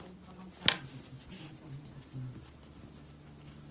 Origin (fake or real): real